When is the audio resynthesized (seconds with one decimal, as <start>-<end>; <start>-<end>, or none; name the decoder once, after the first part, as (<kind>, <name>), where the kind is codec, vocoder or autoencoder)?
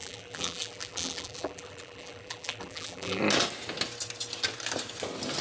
0.0-3.2 (vocoder, BigVGAN v2)